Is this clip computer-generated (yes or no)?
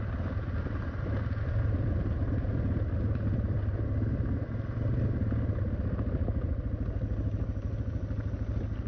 no